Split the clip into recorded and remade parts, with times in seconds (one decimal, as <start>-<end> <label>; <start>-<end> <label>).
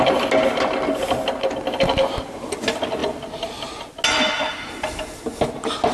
0.0-5.9 recorded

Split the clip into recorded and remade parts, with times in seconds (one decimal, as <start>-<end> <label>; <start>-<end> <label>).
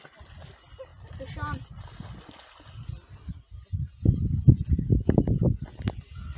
0.0-6.4 recorded